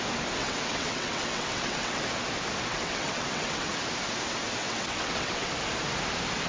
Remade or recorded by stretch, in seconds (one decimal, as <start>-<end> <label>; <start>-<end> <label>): 0.0-0.4 recorded; 0.4-2.0 remade; 2.0-2.7 recorded; 2.7-3.7 remade; 3.7-4.6 recorded; 4.6-5.5 remade; 5.5-6.5 recorded